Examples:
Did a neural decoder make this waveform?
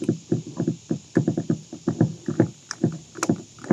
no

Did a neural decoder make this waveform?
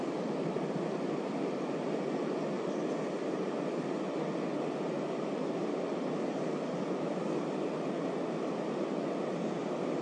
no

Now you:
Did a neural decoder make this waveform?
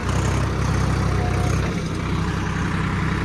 no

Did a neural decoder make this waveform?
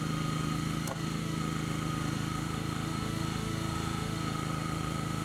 yes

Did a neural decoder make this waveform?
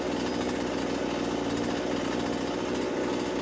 no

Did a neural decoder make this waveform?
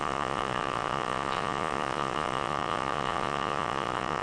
yes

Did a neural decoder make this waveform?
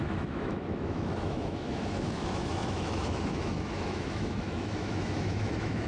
yes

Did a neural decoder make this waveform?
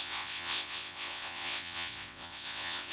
yes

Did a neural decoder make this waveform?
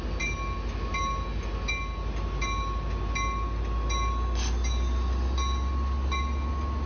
no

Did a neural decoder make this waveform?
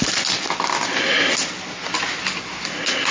no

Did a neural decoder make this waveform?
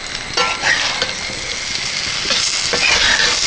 no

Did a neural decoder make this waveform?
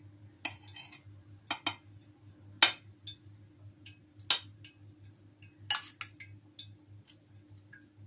no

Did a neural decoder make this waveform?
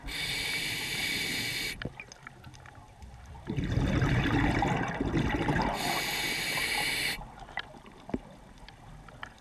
no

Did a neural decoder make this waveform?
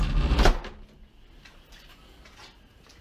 no